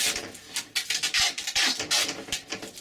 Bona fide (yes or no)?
yes